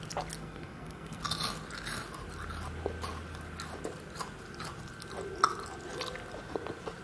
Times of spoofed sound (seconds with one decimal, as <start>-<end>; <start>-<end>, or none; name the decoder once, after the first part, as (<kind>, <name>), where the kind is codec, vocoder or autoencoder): 0.4-1.2 (codec, SNAC)